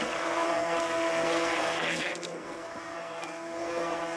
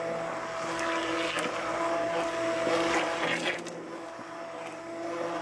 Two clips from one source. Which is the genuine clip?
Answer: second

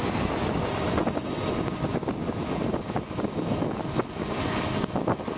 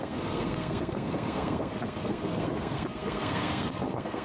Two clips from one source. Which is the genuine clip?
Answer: first